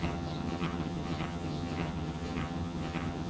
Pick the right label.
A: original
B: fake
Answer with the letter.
B